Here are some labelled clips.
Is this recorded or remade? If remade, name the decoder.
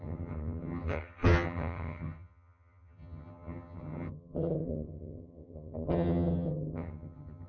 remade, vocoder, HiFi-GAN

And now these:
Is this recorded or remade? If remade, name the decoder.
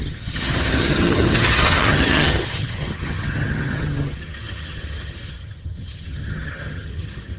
remade, vocoder, HiFi-GAN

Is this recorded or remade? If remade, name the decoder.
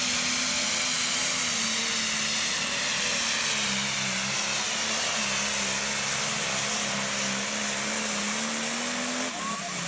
recorded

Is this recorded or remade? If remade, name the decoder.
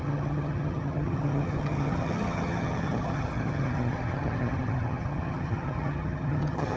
remade, vocoder, HiFi-GAN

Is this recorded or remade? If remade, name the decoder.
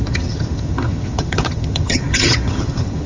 remade, vocoder, HiFi-GAN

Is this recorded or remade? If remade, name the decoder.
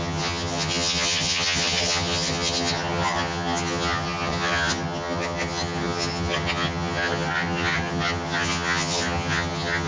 remade, vocoder, HiFi-GAN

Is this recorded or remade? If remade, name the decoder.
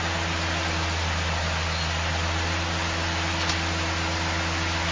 recorded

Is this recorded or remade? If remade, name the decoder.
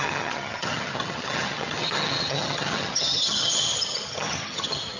remade, vocoder, HiFi-GAN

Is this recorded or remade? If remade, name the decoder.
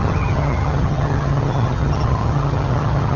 remade, vocoder, HiFi-GAN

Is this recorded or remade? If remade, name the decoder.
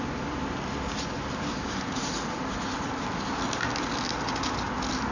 recorded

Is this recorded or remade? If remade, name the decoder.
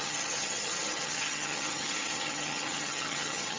remade, vocoder, HiFi-GAN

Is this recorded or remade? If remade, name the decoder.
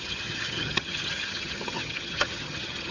remade, vocoder, HiFi-GAN